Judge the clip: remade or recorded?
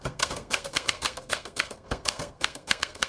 remade